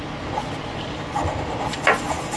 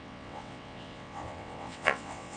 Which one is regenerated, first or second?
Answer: second